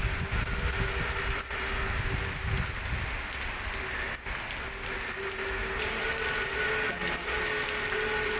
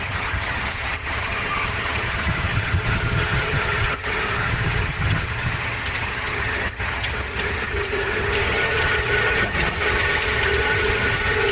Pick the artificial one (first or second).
second